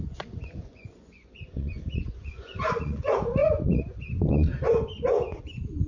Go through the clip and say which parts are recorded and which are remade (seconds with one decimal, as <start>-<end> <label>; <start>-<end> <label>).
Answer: 0.0-5.9 remade